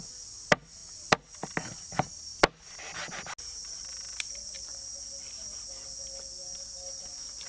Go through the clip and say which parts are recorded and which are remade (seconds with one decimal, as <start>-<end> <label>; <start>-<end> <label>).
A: 0.0-7.5 recorded